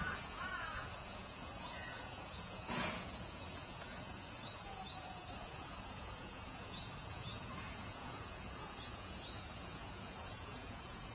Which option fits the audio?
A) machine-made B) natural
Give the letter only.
A